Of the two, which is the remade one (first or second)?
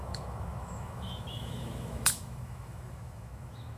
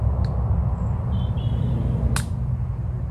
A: first